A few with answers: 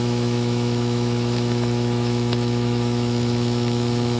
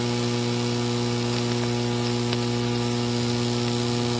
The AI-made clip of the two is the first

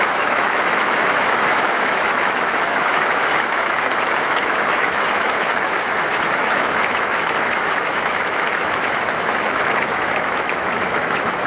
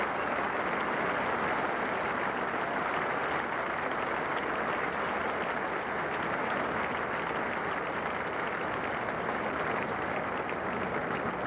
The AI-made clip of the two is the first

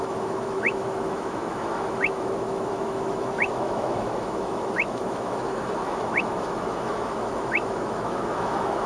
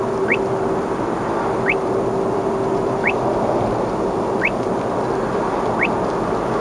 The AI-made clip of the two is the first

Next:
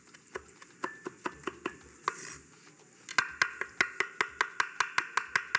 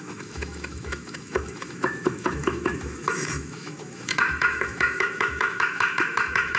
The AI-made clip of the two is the second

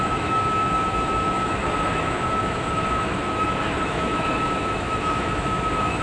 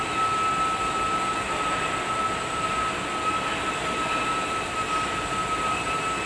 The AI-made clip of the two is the first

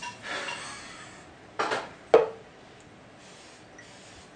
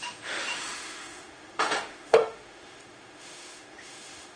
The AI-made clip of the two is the second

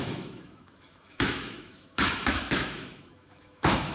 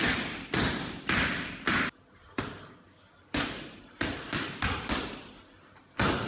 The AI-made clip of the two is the first